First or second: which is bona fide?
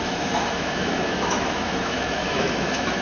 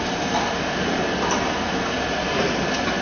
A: second